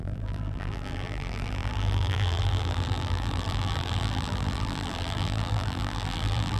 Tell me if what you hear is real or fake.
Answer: fake